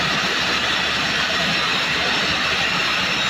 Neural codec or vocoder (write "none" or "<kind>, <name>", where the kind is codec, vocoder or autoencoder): none